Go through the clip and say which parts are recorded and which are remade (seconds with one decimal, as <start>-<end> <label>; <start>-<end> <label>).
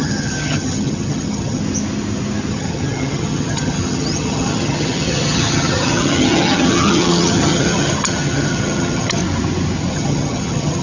0.0-1.6 remade; 1.6-2.5 recorded; 2.5-9.2 remade; 9.2-9.9 recorded; 9.9-10.8 remade